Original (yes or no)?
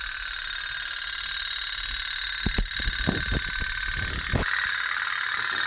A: yes